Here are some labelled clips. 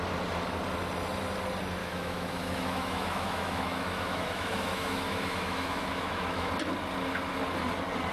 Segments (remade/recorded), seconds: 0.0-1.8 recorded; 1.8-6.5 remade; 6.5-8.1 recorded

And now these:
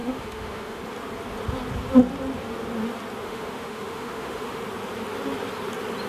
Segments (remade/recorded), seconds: 0.0-0.8 remade; 0.8-3.2 recorded; 3.2-4.6 remade; 4.6-6.1 recorded

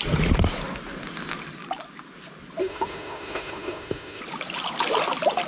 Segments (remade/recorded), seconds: 0.0-2.6 recorded; 2.6-4.2 remade; 4.2-5.5 recorded

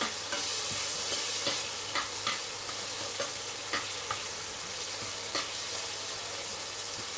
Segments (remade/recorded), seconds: 0.0-7.2 recorded

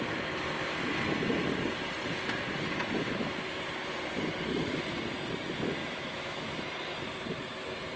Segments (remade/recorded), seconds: 0.0-3.1 recorded; 3.1-3.6 remade; 3.6-5.8 recorded; 5.8-6.5 remade; 6.5-8.0 recorded

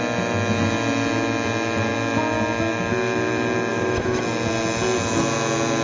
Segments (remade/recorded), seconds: 0.0-3.7 recorded; 3.7-4.2 remade; 4.2-5.8 recorded

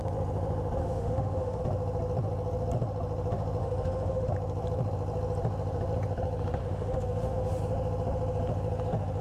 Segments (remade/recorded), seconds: 0.0-0.8 recorded; 0.8-1.6 remade; 1.6-3.6 recorded; 3.6-4.3 remade; 4.3-6.6 recorded; 6.6-7.6 remade; 7.6-9.2 recorded

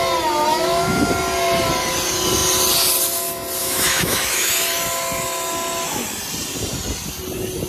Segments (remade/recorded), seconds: 0.0-0.5 recorded; 0.5-1.1 remade; 1.1-3.6 recorded; 3.6-4.5 remade; 4.5-7.7 recorded